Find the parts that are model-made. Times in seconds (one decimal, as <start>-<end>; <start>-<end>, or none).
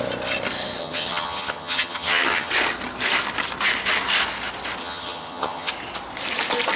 0.8-2.5; 4.8-5.7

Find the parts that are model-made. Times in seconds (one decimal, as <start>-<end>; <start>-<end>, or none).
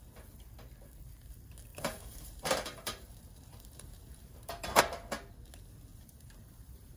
1.7-4.8; 5.9-7.0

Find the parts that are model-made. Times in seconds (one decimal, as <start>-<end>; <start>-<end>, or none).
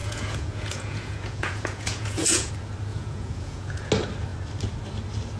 0.0-2.5; 2.9-3.9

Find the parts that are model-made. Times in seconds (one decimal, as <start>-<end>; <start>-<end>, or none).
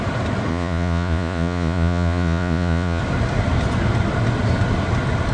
0.5-3.0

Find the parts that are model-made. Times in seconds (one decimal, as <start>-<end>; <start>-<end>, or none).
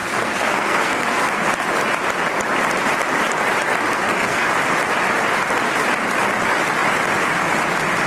0.0-1.5; 3.9-4.5